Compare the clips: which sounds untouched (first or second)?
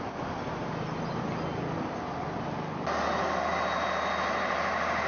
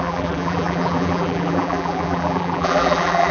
first